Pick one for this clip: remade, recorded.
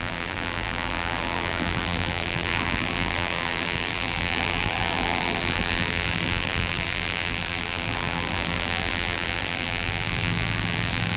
remade